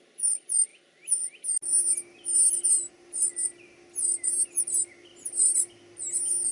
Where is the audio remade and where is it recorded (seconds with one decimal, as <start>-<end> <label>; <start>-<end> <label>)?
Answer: 0.0-6.5 recorded